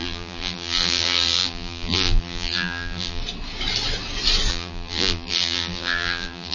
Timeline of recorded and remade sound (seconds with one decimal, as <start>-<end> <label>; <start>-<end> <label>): 0.0-3.2 remade; 3.2-4.5 recorded; 4.5-6.5 remade